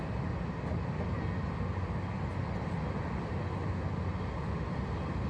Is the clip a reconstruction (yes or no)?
no